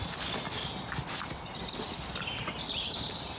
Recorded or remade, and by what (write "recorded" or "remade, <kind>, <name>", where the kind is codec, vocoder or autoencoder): recorded